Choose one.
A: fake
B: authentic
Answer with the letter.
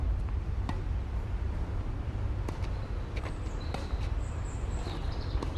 A